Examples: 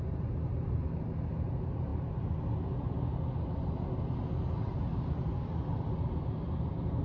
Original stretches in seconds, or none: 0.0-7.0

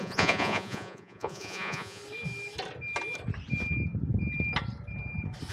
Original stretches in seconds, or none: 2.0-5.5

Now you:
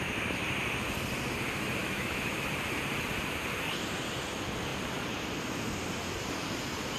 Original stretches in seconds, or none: 0.0-1.8; 2.5-7.0

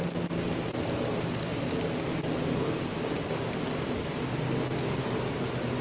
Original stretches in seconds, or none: 0.0-5.8

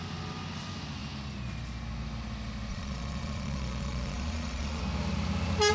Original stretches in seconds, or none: 0.0-2.7; 4.8-5.7